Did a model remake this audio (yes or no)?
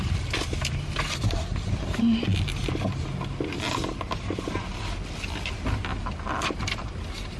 no